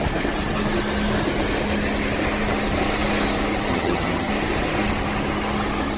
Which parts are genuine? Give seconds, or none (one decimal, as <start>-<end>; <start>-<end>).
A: 0.0-3.7; 4.3-6.0